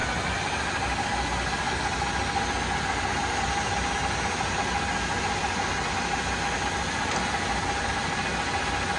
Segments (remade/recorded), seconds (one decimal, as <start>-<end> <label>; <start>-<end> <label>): 0.0-9.0 recorded